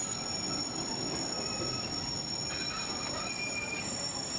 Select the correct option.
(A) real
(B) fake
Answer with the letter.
A